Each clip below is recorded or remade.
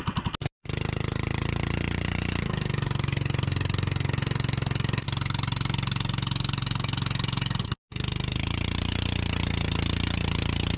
recorded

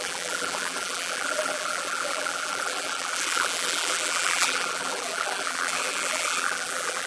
remade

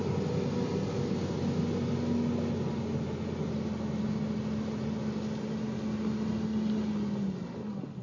recorded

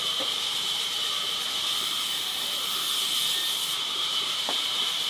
remade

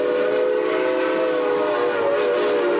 recorded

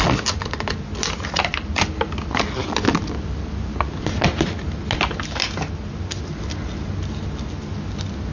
recorded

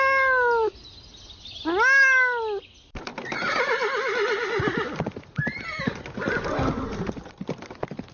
recorded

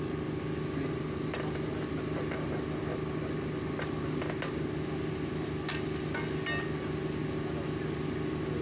recorded